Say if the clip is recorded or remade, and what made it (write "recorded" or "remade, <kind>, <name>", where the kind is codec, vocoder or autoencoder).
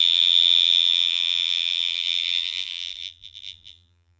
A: remade, vocoder, BigVGAN v2